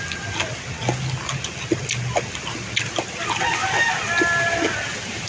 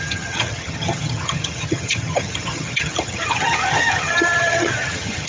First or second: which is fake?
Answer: second